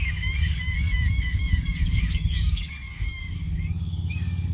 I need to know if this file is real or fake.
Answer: fake